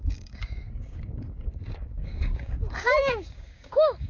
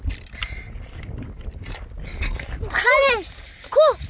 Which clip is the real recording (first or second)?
second